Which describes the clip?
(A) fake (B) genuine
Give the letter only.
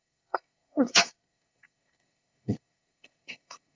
A